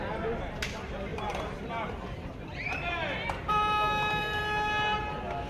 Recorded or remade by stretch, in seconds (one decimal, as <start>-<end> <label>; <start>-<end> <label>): 0.0-1.1 recorded; 1.1-4.4 remade; 4.4-5.5 recorded

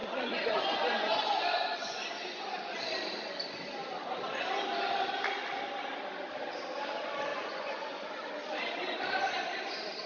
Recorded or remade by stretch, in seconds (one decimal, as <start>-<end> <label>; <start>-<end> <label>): 0.0-2.8 remade; 2.8-7.3 recorded; 7.3-8.1 remade; 8.1-10.1 recorded

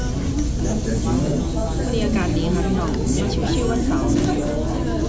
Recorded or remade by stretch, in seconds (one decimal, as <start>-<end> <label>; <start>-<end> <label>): 0.0-5.1 recorded

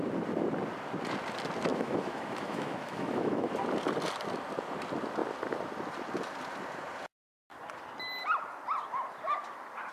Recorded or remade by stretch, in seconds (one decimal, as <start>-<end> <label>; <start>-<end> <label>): 0.0-1.7 recorded; 1.7-3.5 remade; 3.5-9.9 recorded